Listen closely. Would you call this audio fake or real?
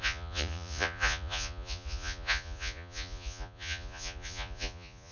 fake